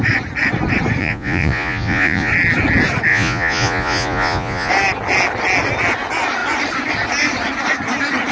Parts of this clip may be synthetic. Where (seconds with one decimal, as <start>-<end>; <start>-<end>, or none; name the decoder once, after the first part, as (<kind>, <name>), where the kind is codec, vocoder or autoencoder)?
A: 1.0-2.3 (vocoder, Vocos); 3.1-4.7